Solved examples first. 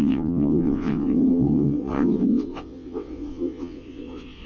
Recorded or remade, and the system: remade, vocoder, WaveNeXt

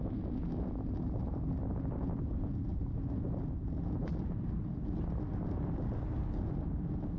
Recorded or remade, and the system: recorded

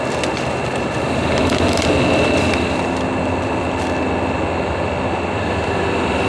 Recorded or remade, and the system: recorded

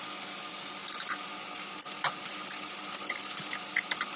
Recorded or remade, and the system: recorded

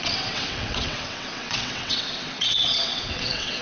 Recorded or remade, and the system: remade, vocoder, WaveNeXt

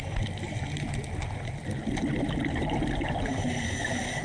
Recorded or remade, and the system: recorded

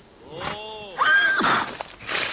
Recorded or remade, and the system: recorded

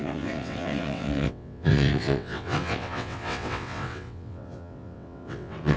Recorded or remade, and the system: remade, vocoder, WaveNeXt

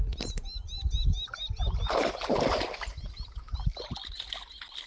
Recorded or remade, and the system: recorded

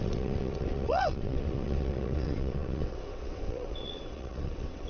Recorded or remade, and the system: remade, vocoder, WaveNeXt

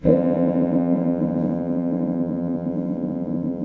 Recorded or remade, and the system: remade, vocoder, WaveNeXt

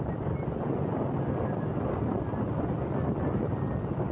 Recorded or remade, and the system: recorded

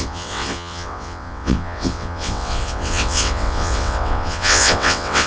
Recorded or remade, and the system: remade, vocoder, WaveNeXt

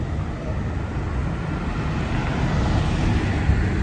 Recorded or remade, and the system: recorded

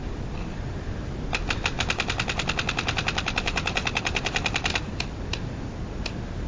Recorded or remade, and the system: recorded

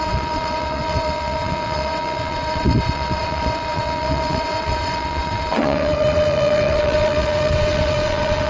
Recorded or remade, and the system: remade, vocoder, WaveNeXt